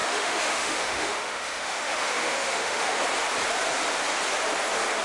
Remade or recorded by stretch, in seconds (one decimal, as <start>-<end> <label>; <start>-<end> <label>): 0.0-3.0 remade; 3.0-5.0 recorded